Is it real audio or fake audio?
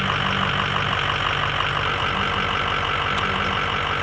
real